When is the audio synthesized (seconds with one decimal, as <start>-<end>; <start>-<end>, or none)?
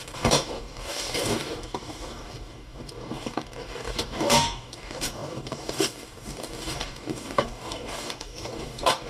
0.0-9.1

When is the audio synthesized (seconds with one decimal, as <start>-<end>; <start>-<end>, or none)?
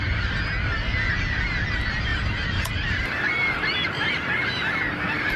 2.1-5.4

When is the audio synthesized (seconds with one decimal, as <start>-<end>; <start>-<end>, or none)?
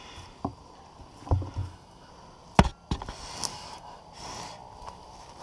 1.6-2.1; 3.5-4.0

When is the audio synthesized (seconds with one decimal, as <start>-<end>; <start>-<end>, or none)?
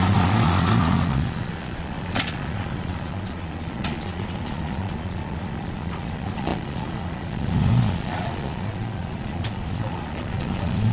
0.0-10.9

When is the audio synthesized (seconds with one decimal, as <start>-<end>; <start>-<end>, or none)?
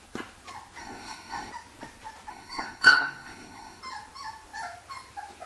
0.8-1.5; 2.3-3.8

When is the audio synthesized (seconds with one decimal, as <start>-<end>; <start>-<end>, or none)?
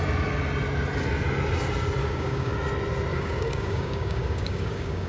2.0-2.5; 3.1-5.1